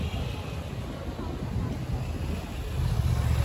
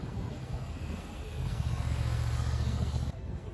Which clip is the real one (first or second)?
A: first